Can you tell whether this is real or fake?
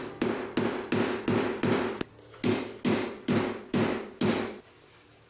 real